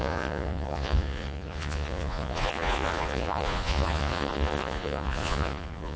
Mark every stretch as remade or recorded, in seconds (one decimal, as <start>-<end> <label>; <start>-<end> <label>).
0.0-6.0 remade